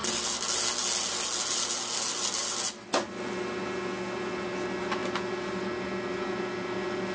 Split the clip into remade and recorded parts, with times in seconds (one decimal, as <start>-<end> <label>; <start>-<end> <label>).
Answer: 0.0-7.1 recorded